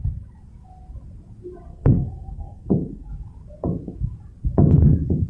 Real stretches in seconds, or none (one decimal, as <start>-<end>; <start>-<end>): 0.0-1.7; 3.1-5.3